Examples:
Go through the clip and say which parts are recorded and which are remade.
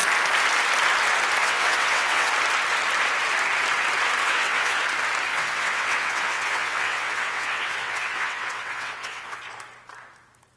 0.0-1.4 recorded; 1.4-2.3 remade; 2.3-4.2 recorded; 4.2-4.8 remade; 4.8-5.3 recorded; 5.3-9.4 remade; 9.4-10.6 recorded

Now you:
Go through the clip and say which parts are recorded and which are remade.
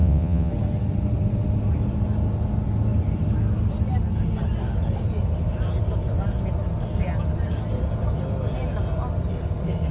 0.0-0.5 remade; 0.5-9.9 recorded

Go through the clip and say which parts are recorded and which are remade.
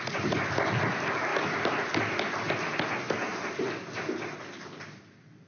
0.0-5.5 recorded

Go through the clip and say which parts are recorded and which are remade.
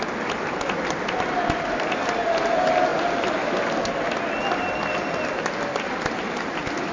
0.0-6.9 recorded